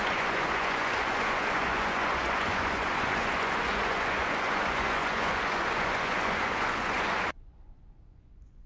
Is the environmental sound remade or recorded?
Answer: remade